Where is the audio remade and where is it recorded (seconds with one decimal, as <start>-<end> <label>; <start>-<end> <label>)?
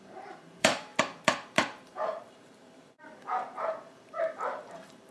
0.0-5.1 remade